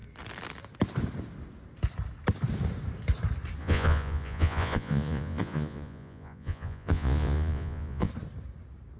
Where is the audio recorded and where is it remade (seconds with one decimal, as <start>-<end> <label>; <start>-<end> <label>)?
0.0-3.6 recorded; 3.6-8.1 remade; 8.1-9.0 recorded